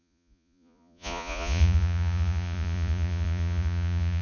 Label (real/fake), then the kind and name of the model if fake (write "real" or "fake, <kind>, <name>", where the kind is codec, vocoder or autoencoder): fake, vocoder, Vocos